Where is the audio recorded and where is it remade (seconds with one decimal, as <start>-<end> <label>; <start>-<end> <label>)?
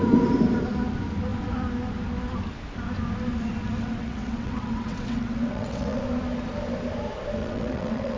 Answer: 0.0-3.8 recorded; 3.8-6.0 remade; 6.0-7.4 recorded; 7.4-8.2 remade